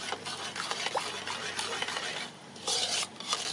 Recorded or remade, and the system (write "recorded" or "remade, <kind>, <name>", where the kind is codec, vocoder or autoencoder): recorded